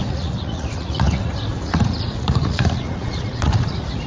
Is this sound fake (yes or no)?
yes